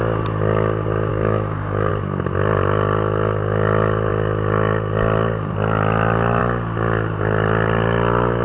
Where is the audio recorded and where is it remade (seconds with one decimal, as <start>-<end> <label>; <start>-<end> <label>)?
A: 0.0-1.1 recorded; 1.1-1.9 remade; 1.9-8.4 recorded